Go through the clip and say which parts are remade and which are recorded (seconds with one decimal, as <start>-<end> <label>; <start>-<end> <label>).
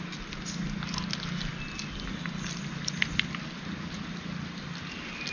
0.0-5.3 recorded